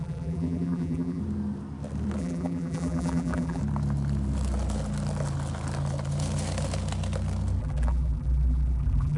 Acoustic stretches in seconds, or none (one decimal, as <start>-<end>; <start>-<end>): 1.2-2.2; 3.6-7.6